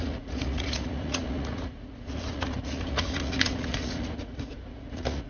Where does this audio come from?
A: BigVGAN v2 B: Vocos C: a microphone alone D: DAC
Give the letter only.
B